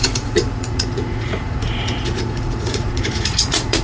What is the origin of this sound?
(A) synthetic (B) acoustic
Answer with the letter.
A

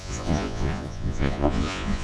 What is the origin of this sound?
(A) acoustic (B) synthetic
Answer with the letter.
B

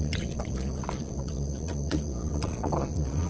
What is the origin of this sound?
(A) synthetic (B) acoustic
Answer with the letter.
A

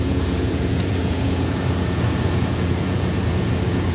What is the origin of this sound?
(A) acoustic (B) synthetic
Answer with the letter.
B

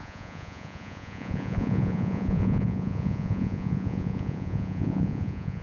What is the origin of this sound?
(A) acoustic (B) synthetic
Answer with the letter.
B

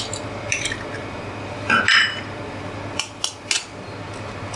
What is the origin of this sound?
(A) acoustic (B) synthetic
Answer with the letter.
A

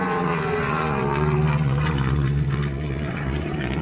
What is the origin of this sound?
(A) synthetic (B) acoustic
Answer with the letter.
A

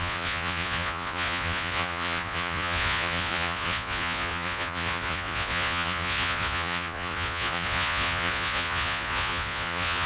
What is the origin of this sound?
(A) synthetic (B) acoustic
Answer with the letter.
A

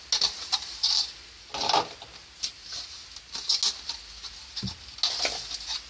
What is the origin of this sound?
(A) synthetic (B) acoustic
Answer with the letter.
B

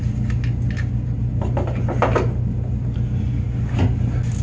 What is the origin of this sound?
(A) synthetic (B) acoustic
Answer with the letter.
B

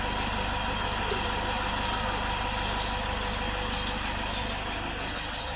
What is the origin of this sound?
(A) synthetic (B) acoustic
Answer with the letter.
B